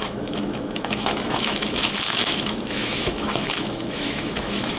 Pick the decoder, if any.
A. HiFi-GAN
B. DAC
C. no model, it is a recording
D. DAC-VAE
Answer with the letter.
D